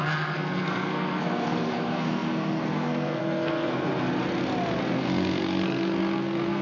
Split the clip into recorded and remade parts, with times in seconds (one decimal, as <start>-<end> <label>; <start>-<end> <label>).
0.0-3.9 remade; 3.9-4.8 recorded; 4.8-6.6 remade